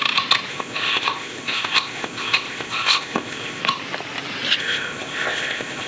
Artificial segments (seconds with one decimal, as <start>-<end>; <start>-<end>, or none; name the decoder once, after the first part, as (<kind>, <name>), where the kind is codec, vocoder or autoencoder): 0.5-3.6 (codec, ZipCodec); 4.6-5.9